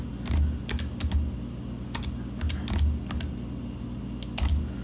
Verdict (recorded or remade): recorded